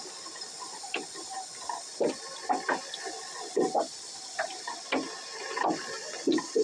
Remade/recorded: recorded